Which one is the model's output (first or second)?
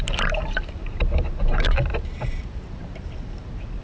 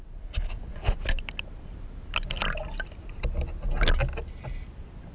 first